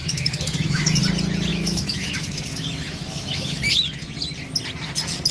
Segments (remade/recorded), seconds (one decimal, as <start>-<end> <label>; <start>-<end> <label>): 0.0-1.0 remade; 1.0-1.5 recorded; 1.5-3.7 remade; 3.7-5.3 recorded

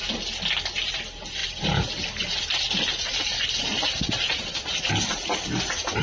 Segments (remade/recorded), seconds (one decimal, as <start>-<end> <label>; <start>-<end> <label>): 0.0-6.0 recorded

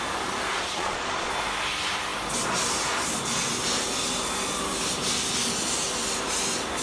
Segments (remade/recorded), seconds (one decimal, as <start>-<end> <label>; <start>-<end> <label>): 0.0-0.5 recorded; 0.5-1.3 remade; 1.3-6.8 recorded

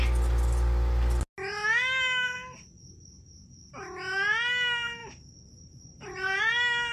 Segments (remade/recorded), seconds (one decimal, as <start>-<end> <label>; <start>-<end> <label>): 0.0-5.0 recorded; 5.0-6.4 remade; 6.4-6.9 recorded